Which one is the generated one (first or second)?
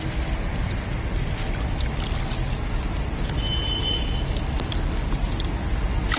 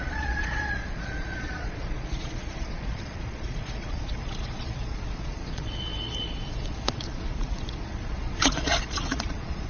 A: second